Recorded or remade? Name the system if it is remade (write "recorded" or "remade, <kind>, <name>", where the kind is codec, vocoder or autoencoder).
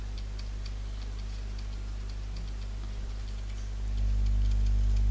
recorded